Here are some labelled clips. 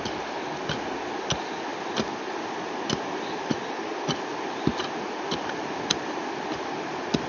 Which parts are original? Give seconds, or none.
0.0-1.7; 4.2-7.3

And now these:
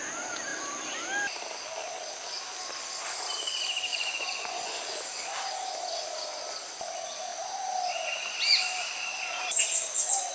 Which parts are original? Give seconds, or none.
0.0-3.9; 4.8-10.3

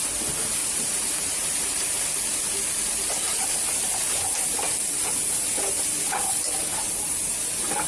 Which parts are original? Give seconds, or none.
0.0-0.6; 2.0-3.3; 4.0-7.9

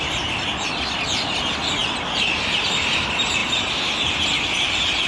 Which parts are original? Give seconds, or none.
0.0-3.4; 3.9-5.1

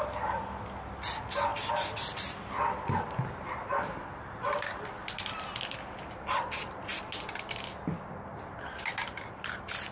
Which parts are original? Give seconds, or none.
0.0-9.9